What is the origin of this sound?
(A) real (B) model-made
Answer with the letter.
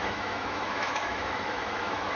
B